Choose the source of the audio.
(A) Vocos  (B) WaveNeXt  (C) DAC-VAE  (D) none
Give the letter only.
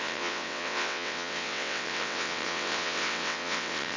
B